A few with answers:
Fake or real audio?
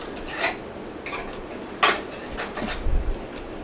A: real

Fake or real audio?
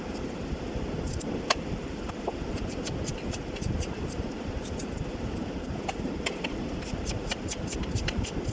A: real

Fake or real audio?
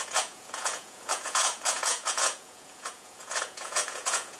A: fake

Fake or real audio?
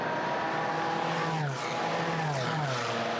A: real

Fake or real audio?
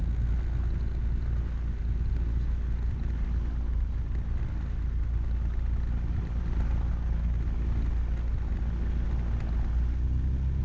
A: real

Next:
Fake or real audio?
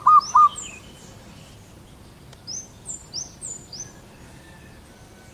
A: real